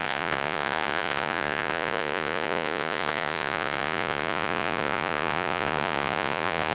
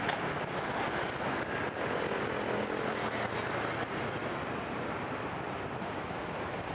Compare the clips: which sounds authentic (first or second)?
second